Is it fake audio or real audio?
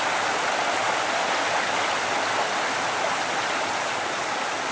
real